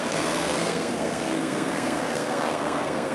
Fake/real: fake